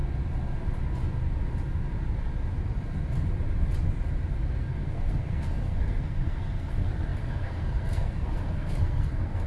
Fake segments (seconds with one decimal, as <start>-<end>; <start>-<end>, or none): 4.3-9.5